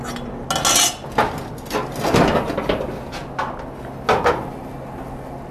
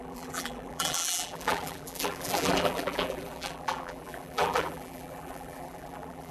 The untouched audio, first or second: first